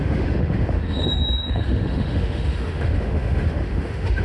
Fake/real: fake